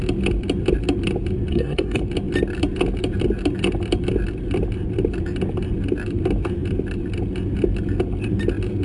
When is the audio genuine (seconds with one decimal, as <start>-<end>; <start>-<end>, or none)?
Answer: 0.0-1.5; 2.0-8.8